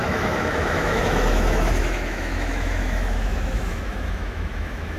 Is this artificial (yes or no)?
yes